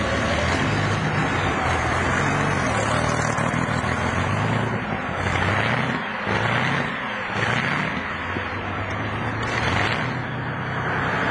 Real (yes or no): yes